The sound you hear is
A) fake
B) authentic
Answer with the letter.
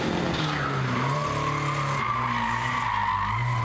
B